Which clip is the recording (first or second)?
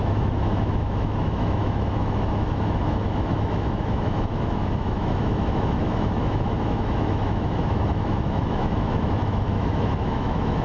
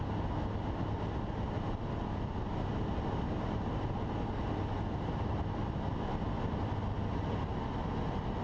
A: second